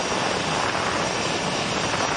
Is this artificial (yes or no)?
no